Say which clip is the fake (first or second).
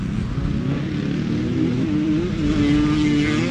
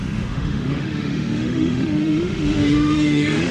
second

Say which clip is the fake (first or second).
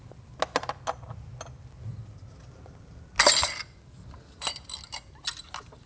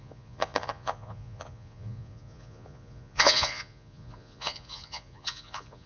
second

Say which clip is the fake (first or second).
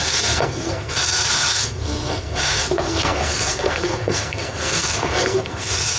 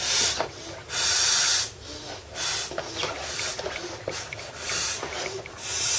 first